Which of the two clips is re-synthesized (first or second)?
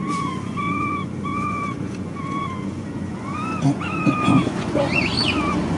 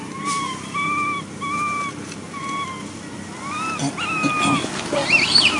first